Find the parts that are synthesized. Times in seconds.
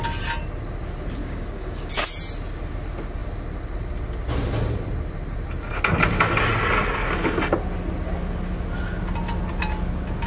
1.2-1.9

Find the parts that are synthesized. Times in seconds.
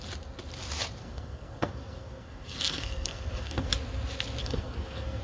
1.0-3.7; 4.4-5.2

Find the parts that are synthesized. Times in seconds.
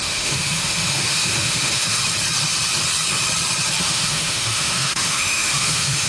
0.0-2.0; 3.8-6.1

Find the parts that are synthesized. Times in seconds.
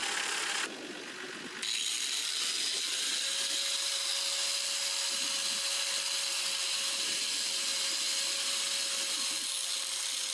none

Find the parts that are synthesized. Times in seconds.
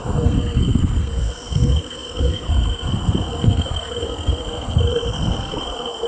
0.0-6.1